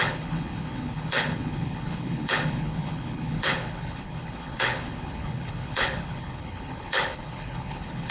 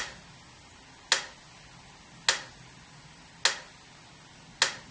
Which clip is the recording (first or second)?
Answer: second